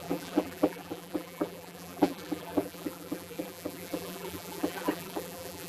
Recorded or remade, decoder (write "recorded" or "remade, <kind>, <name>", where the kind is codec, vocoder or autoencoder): remade, vocoder, BigVGAN v2